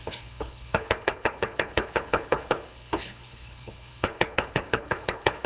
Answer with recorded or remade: remade